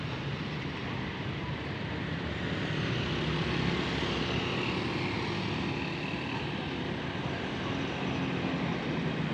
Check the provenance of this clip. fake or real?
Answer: real